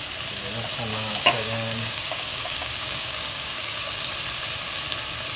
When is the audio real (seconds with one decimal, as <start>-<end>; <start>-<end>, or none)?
0.0-0.9; 4.1-5.4